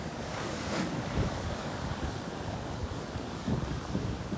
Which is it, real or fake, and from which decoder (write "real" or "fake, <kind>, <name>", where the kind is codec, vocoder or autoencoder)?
fake, codec, DAC